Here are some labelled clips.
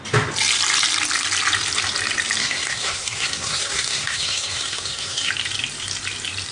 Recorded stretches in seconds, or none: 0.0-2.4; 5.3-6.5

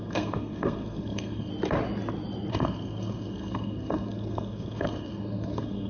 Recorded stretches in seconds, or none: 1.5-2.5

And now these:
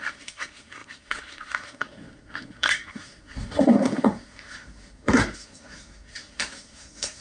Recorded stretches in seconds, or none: none

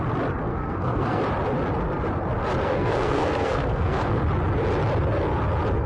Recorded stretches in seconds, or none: 0.0-0.5; 1.2-2.6; 4.2-5.9